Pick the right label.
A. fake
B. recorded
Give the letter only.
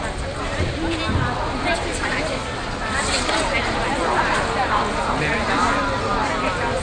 B